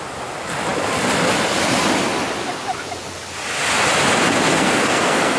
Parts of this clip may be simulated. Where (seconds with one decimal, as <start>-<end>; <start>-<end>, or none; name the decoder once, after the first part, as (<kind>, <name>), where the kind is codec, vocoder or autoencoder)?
4.5-5.4 (codec, SNAC)